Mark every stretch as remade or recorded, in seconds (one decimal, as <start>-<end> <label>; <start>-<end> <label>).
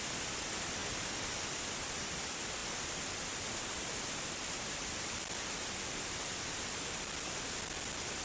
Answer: 0.0-8.2 recorded